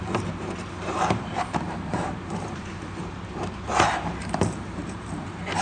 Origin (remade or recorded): remade